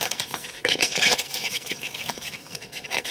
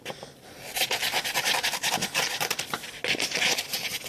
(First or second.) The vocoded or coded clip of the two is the first